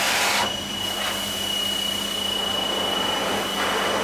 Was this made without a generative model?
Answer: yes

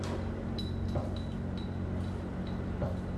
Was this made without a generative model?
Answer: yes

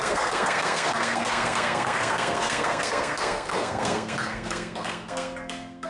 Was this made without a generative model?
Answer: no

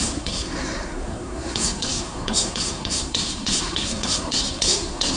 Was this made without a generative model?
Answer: no